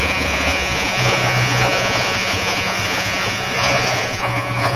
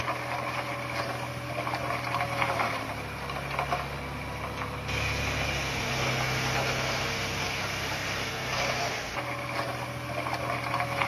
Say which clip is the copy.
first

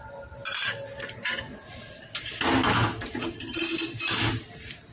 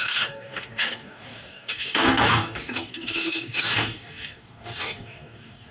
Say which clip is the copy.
second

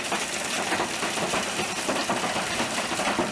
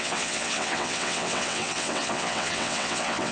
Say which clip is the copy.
second